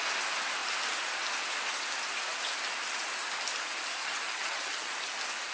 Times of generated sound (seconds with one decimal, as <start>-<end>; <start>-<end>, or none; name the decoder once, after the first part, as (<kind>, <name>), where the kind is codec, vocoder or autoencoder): 4.0-4.9 (vocoder, HiFi-GAN)